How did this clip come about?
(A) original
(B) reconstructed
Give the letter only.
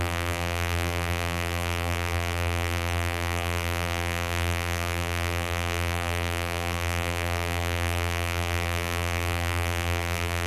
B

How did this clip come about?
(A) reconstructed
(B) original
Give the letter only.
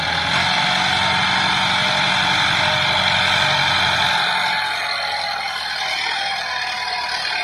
B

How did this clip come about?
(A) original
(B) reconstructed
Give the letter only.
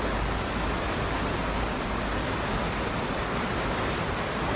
A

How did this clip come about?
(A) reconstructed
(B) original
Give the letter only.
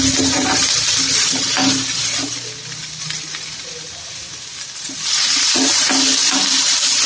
B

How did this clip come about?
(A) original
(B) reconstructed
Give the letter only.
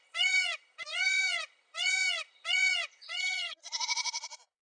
B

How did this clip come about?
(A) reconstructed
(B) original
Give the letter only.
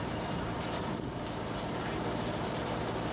A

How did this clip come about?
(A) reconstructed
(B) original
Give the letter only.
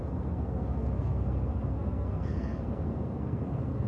A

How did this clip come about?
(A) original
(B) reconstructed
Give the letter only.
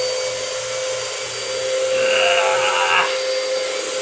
A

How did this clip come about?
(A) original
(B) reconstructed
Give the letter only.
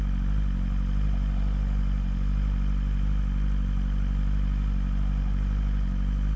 A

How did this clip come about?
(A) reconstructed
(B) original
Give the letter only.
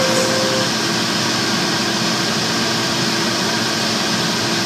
B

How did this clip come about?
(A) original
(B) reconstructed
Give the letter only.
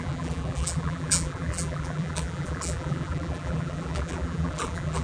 B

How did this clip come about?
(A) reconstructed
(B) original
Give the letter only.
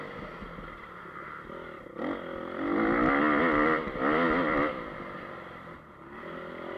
B